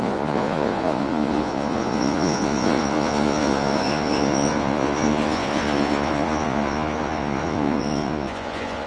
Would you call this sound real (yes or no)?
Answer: no